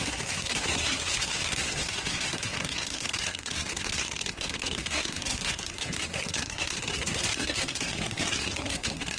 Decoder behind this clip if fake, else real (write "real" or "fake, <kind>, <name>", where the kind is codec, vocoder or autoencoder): fake, codec, SNAC